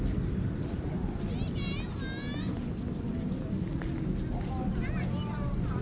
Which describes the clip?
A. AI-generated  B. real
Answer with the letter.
B